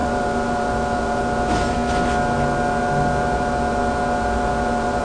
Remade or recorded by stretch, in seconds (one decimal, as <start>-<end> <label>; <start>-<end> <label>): 0.0-5.0 recorded